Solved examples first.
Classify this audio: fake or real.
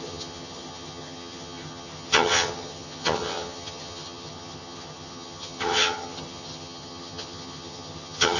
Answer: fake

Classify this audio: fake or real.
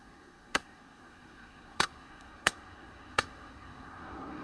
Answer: fake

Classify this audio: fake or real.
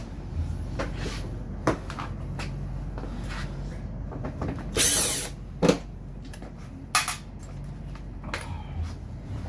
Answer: real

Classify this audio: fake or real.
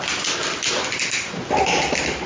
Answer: real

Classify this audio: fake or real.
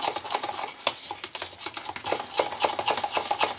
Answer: real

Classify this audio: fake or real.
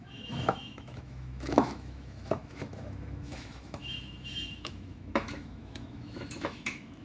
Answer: fake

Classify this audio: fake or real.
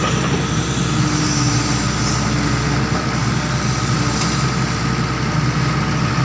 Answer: real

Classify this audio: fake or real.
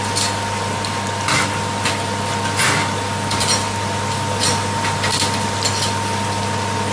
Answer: real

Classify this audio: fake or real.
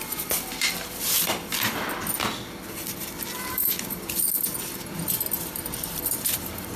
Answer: fake